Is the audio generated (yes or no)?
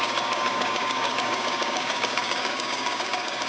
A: yes